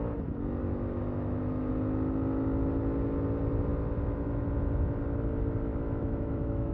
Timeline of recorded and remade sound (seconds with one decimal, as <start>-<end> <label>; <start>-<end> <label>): 0.0-0.6 recorded; 0.6-1.7 remade; 1.7-5.7 recorded; 5.7-6.7 remade